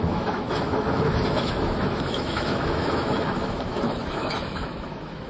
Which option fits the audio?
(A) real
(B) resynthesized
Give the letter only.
B